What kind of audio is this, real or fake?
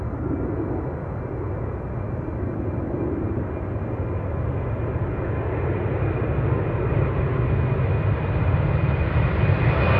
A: real